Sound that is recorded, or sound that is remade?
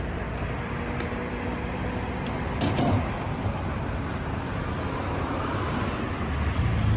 recorded